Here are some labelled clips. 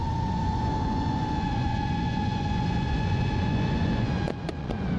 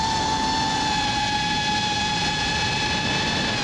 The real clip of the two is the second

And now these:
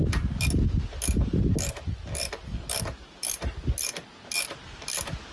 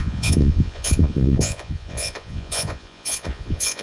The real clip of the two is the first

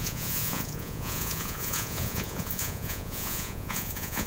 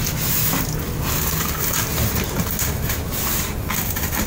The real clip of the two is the second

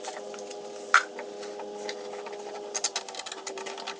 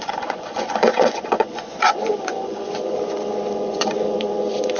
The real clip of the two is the first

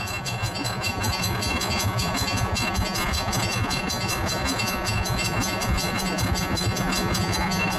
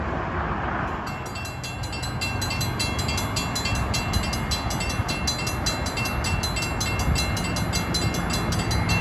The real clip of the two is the second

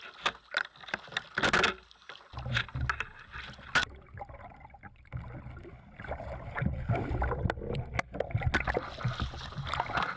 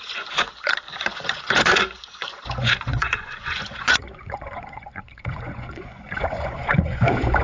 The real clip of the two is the first